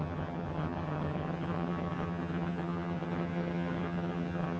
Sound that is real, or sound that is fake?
fake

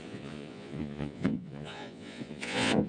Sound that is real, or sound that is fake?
fake